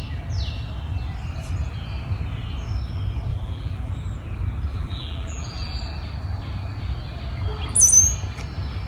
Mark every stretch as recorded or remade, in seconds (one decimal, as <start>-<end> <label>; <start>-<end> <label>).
0.0-3.3 recorded; 3.3-3.9 remade; 3.9-4.7 recorded; 4.7-5.8 remade; 5.8-8.9 recorded